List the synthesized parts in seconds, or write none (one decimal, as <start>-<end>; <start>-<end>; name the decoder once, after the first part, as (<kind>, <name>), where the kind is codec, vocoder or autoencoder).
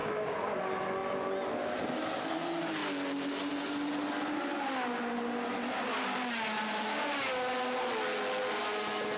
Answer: 0.0-0.6 (codec, DAC)